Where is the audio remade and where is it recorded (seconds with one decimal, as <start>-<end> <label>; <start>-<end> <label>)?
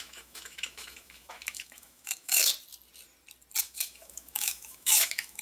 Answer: 0.0-2.5 remade; 2.5-3.6 recorded; 3.6-5.4 remade